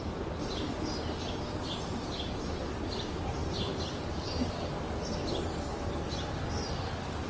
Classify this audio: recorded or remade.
recorded